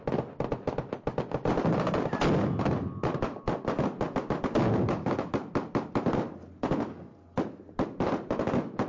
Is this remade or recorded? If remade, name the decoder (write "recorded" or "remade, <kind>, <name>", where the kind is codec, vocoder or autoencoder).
recorded